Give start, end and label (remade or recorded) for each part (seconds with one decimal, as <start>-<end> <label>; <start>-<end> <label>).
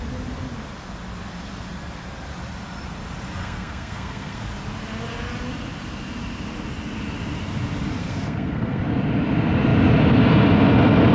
0.0-3.4 recorded; 3.4-4.4 remade; 4.4-8.0 recorded; 8.0-8.8 remade; 8.8-11.1 recorded